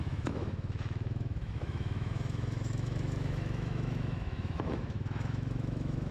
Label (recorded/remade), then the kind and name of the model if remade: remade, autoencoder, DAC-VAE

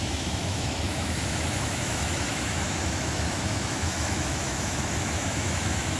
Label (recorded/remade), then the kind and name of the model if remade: remade, autoencoder, DAC-VAE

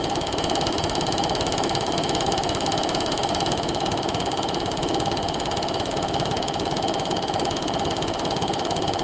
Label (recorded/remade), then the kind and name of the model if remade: remade, autoencoder, DAC-VAE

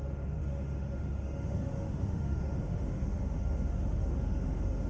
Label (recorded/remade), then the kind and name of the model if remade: remade, autoencoder, DAC-VAE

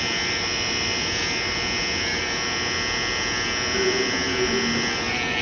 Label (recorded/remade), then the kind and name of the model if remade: recorded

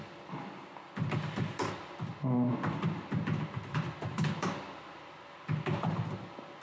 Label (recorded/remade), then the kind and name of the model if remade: recorded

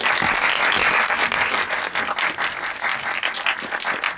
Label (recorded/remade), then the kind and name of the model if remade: recorded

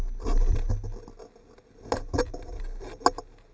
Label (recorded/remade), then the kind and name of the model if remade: recorded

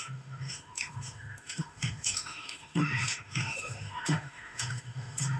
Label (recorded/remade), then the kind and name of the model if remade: remade, autoencoder, DAC-VAE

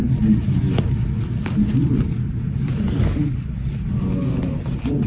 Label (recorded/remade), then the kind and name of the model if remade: recorded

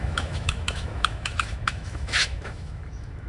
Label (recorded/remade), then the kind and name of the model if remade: remade, autoencoder, DAC-VAE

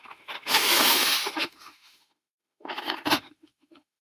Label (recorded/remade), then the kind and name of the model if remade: remade, autoencoder, DAC-VAE